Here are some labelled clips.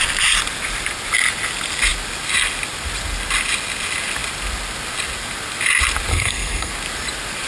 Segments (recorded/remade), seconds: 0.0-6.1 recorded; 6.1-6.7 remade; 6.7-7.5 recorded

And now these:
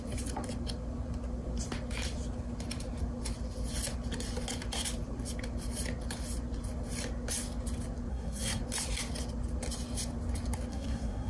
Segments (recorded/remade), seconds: 0.0-8.1 recorded; 8.1-8.6 remade; 8.6-10.7 recorded; 10.7-11.3 remade

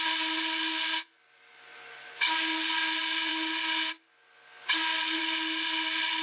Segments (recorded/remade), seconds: 0.0-6.2 recorded